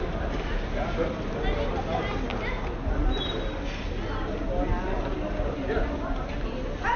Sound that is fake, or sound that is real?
real